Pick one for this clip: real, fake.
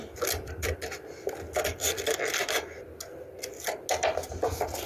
real